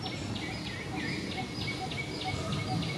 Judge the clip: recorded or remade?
recorded